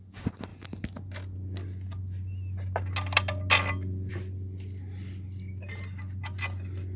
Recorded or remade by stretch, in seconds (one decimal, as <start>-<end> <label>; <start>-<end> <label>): 0.0-7.0 recorded